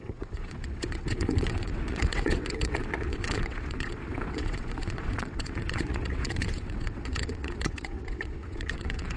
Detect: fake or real fake